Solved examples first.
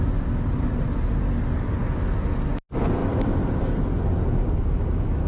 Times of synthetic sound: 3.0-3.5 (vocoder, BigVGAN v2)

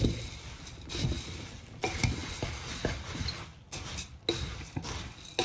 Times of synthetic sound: none

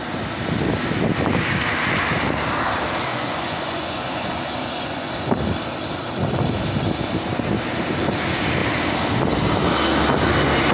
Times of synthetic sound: 3.1-5.1 (vocoder, Vocos)

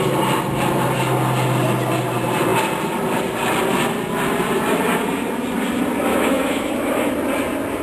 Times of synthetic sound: 6.1-7.1 (autoencoder, DAC-VAE)